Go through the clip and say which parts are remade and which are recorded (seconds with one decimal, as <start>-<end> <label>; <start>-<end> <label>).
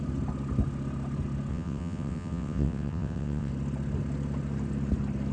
0.0-1.5 recorded; 1.5-3.5 remade; 3.5-5.3 recorded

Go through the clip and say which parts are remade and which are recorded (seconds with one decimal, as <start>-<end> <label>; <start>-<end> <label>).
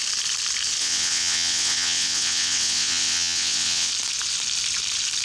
0.0-0.8 recorded; 0.8-3.9 remade; 3.9-5.2 recorded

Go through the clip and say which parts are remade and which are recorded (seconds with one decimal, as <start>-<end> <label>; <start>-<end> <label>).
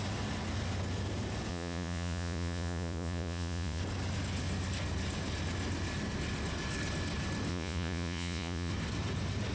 0.0-1.5 recorded; 1.5-3.8 remade; 3.8-7.5 recorded; 7.5-8.7 remade; 8.7-9.5 recorded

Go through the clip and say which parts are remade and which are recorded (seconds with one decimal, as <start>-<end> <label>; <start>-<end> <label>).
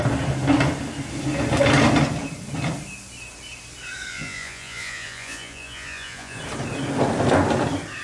0.0-4.1 recorded; 4.1-6.4 remade; 6.4-8.0 recorded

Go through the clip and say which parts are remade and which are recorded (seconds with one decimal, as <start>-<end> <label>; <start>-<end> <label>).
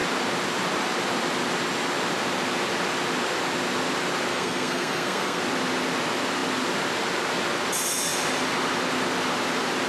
0.0-4.3 recorded; 4.3-5.4 remade; 5.4-9.9 recorded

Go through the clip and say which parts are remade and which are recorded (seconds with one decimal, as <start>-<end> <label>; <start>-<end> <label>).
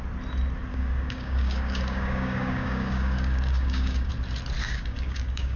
0.0-0.7 recorded; 0.7-4.1 remade; 4.1-4.6 recorded; 4.6-5.6 remade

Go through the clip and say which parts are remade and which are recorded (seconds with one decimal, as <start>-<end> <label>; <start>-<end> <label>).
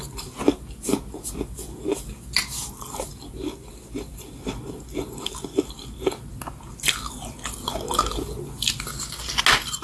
0.0-9.8 recorded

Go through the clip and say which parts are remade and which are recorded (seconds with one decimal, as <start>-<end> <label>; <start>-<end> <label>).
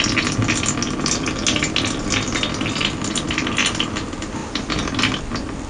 0.0-5.7 recorded